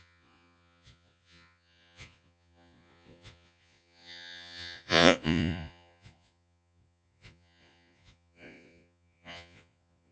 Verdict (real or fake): fake